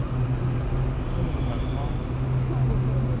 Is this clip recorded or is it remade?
recorded